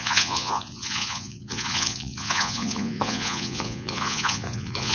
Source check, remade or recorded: remade